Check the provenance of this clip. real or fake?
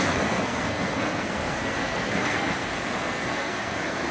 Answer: fake